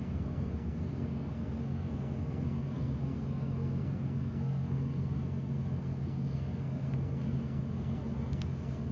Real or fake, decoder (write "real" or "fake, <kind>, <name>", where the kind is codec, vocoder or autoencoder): fake, codec, SNAC